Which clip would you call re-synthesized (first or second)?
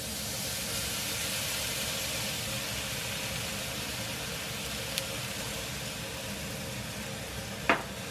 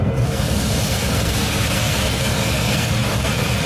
second